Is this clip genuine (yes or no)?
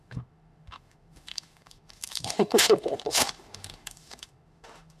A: no